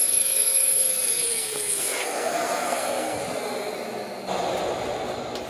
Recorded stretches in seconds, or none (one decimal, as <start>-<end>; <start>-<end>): 3.2-5.5